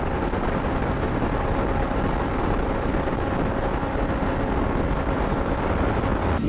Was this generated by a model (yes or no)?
no